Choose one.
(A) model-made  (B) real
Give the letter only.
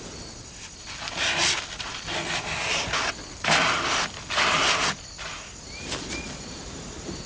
B